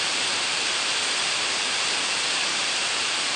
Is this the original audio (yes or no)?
no